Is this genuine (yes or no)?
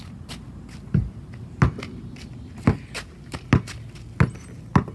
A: yes